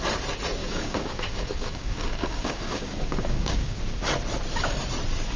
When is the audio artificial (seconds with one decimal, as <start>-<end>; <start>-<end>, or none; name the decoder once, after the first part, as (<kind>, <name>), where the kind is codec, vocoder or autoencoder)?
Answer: 0.6-3.8 (codec, DAC)